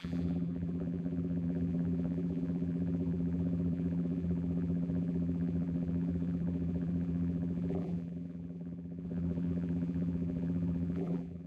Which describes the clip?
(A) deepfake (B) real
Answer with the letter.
A